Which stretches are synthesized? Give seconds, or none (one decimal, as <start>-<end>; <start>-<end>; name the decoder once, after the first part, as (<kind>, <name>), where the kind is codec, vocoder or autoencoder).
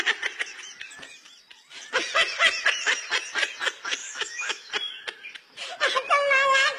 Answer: 4.0-4.7 (autoencoder, DAC-VAE)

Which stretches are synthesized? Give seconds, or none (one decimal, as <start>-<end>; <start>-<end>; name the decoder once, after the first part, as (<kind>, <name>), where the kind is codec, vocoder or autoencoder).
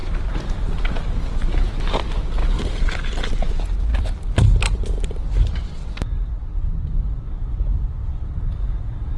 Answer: none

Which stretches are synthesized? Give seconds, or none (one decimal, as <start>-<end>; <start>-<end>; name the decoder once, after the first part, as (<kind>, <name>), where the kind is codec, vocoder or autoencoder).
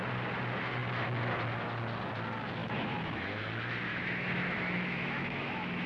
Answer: 2.6-3.5 (autoencoder, DAC-VAE); 3.9-5.9